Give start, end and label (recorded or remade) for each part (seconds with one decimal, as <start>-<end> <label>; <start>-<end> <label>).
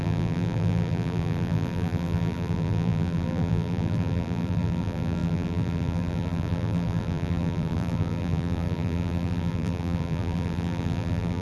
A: 0.0-11.4 remade